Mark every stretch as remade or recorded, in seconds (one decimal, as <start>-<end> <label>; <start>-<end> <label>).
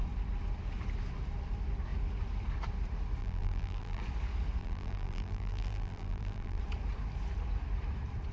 0.0-3.2 recorded; 3.2-4.0 remade; 4.0-4.6 recorded; 4.6-6.6 remade; 6.6-8.3 recorded